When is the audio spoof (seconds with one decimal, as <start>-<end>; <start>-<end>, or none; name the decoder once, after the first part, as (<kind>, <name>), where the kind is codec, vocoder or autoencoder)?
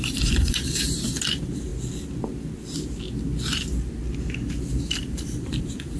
0.0-1.7 (vocoder, BigVGAN v2); 4.8-6.0